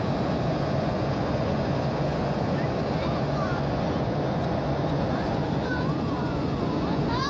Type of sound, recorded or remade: remade